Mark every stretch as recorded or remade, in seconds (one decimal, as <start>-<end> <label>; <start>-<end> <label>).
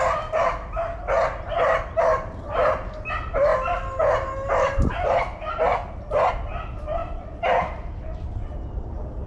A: 0.0-9.3 recorded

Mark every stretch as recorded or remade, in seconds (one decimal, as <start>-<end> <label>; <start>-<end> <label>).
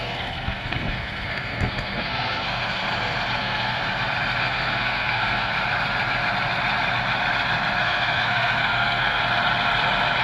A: 0.0-2.8 remade; 2.8-3.4 recorded; 3.4-3.8 remade; 3.8-4.4 recorded; 4.4-5.5 remade; 5.5-7.8 recorded; 7.8-9.2 remade; 9.2-10.2 recorded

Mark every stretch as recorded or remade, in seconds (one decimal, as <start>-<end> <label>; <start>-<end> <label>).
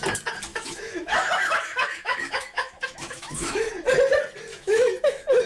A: 0.0-0.5 recorded; 0.5-3.7 remade; 3.7-4.5 recorded; 4.5-5.5 remade